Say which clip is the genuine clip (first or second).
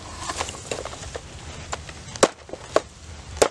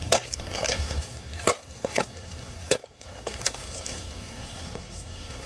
first